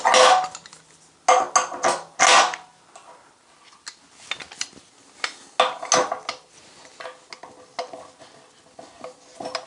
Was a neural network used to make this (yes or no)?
no